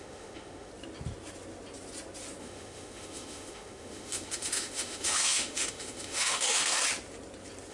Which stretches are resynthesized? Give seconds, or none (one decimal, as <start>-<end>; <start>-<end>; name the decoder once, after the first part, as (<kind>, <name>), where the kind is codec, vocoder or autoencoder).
0.0-0.7 (autoencoder, DAC-VAE); 2.4-6.8